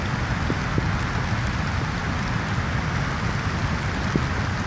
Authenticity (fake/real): real